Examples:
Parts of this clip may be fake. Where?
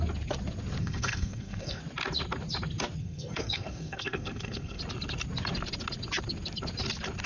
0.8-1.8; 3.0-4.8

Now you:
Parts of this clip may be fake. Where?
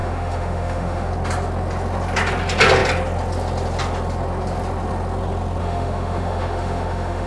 0.0-1.1; 5.6-7.3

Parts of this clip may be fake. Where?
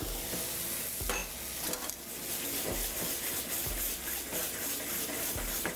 none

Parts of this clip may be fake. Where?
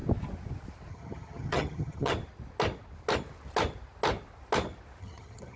0.9-2.1; 5.0-5.6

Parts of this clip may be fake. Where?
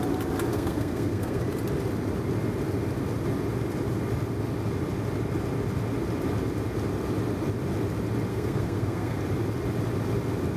0.5-1.4; 8.3-9.2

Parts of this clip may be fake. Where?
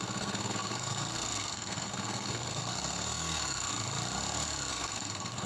0.0-3.7; 4.7-5.5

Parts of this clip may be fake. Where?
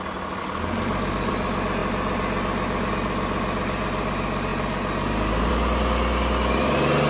0.4-1.3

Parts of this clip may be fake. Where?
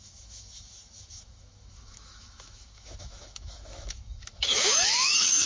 0.0-5.5